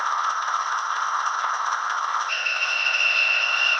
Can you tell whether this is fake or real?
fake